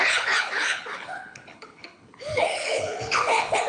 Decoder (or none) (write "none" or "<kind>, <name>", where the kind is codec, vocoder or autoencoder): codec, HILCodec